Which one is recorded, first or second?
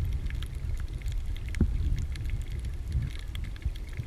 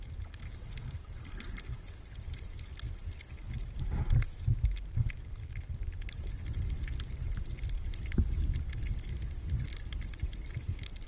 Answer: second